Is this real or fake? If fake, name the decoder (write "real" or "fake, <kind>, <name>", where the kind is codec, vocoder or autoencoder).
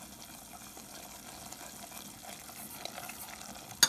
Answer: real